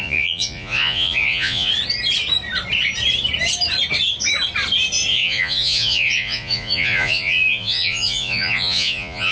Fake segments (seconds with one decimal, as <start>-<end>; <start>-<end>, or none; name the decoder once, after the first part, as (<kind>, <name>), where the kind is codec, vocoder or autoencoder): 0.0-1.7 (vocoder, Vocos); 5.1-9.3